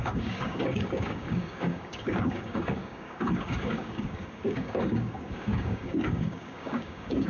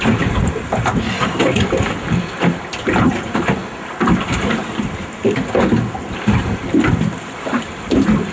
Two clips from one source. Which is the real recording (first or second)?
second